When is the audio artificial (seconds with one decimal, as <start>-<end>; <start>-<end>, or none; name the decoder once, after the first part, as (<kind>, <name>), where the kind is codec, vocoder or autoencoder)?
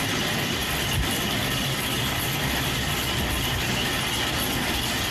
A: 0.6-3.7 (vocoder, BigVGAN v2)